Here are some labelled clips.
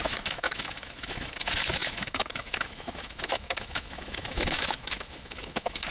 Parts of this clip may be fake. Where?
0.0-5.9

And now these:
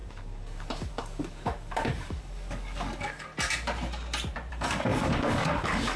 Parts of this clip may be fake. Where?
0.0-3.3; 4.5-6.0

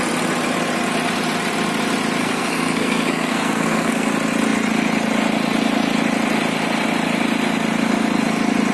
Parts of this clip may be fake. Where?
2.2-4.1

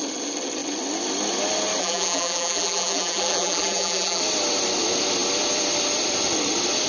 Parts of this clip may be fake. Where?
1.8-4.2

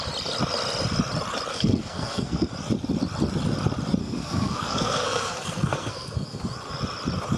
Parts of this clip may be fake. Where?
1.5-2.5; 4.0-6.4

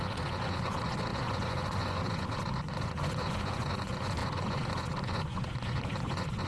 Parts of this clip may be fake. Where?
0.0-6.5

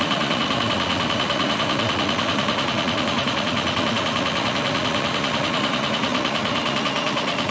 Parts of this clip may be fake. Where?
0.0-7.5